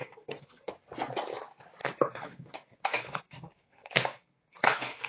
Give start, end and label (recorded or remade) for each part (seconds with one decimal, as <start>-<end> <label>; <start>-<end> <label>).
0.0-0.7 remade; 0.7-1.8 recorded; 1.8-5.1 remade